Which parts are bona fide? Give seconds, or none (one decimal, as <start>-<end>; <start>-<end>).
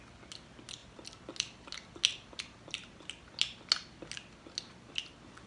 0.0-5.5